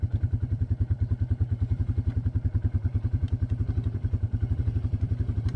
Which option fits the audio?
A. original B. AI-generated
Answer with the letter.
B